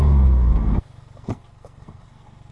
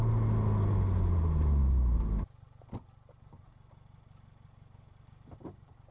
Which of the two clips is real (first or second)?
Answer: second